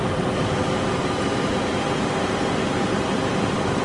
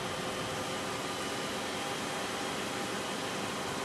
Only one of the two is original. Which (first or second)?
second